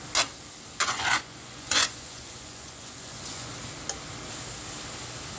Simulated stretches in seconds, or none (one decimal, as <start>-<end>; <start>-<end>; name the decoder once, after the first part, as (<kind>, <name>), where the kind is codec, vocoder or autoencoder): 0.8-3.5 (vocoder, Vocos)